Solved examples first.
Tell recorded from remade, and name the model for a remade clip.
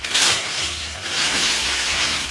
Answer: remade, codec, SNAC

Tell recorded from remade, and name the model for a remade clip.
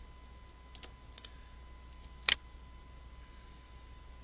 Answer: recorded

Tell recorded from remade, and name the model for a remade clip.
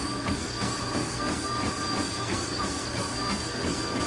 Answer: remade, codec, SNAC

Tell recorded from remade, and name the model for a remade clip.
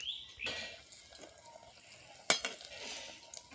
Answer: recorded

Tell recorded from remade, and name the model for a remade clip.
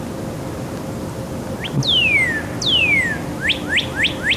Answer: recorded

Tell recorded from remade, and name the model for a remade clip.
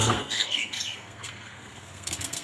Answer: remade, codec, SNAC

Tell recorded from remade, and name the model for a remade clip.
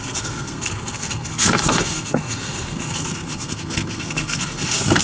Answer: remade, codec, SNAC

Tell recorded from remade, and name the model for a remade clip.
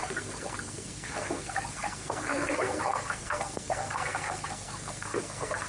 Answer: remade, codec, SNAC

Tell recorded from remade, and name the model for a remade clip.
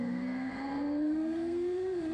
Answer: remade, codec, SNAC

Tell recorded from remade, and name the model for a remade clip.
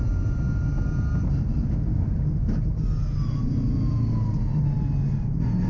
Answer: recorded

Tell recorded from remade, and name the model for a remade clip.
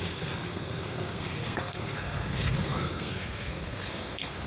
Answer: remade, codec, SNAC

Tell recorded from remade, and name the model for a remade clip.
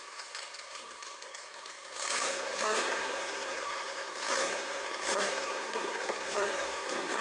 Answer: remade, codec, SNAC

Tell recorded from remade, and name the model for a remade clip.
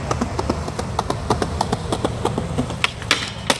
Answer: recorded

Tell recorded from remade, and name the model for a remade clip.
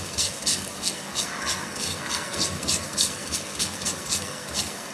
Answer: remade, codec, SNAC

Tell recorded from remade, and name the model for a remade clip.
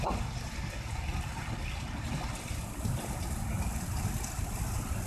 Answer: recorded